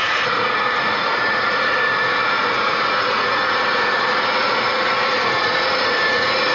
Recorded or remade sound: remade